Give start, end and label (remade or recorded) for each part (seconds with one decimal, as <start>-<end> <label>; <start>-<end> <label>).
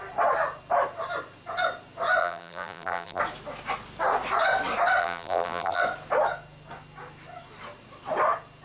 0.0-2.2 recorded; 2.2-3.2 remade; 3.2-5.0 recorded; 5.0-5.8 remade; 5.8-8.6 recorded